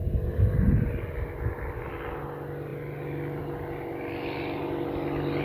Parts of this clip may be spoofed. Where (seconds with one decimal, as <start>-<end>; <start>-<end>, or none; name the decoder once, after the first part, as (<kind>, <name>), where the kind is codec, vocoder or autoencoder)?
none